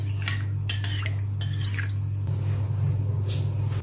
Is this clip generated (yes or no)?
no